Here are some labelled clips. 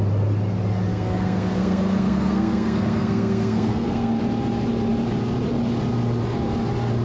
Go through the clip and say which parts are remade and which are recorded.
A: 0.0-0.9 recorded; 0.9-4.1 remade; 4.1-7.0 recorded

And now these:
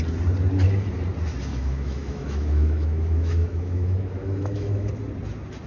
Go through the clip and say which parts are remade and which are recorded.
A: 0.0-1.5 recorded; 1.5-4.9 remade; 4.9-5.7 recorded

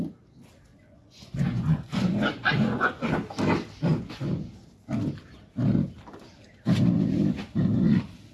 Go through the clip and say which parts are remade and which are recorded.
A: 0.0-0.7 recorded; 0.7-3.1 remade; 3.1-3.9 recorded; 3.9-4.5 remade; 4.5-8.3 recorded

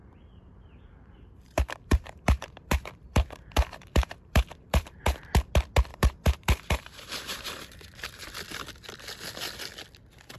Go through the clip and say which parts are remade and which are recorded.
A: 0.0-5.0 remade; 5.0-5.9 recorded; 5.9-8.3 remade; 8.3-10.4 recorded

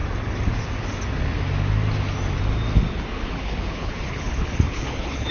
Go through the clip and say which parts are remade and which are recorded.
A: 0.0-2.8 recorded; 2.8-5.3 remade

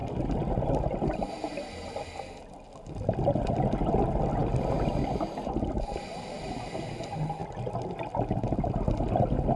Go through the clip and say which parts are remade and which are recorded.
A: 0.0-9.6 recorded

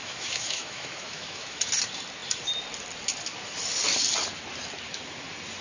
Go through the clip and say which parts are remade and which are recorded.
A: 0.0-1.6 remade; 1.6-5.6 recorded

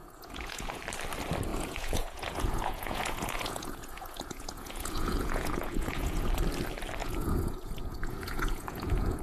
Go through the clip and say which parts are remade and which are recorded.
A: 0.0-0.8 remade; 0.8-1.5 recorded; 1.5-6.3 remade; 6.3-7.0 recorded; 7.0-9.2 remade